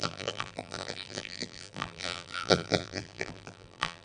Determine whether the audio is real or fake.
fake